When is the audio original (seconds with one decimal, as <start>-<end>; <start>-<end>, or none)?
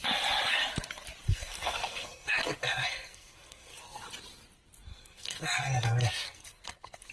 0.0-1.3; 4.0-4.9